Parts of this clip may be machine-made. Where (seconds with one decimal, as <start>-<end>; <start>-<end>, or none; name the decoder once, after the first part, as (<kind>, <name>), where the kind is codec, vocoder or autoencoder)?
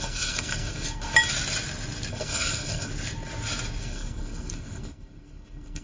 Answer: 0.0-1.1 (codec, SNAC); 2.1-2.9; 3.8-5.8